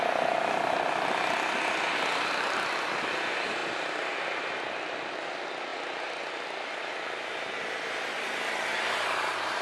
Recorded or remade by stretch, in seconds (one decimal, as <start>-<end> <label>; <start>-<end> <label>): 0.0-9.6 recorded